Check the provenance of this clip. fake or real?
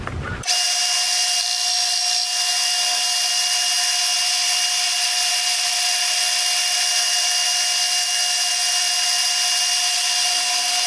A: real